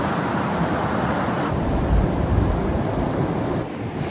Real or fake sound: real